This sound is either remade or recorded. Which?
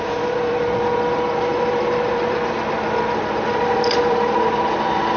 remade